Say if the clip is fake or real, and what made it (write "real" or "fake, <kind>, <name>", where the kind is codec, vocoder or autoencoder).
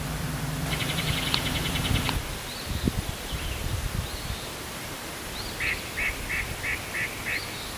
fake, vocoder, BigVGAN v2